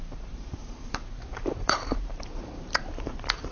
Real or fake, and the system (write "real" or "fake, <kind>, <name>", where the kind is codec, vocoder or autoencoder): fake, vocoder, BigVGAN v2